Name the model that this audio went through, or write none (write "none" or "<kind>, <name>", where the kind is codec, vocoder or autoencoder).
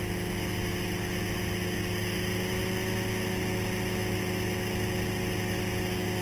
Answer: none